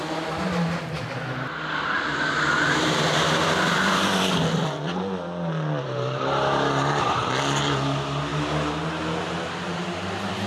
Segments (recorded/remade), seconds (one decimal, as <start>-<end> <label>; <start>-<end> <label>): 0.0-8.3 remade; 8.3-9.2 recorded; 9.2-10.5 remade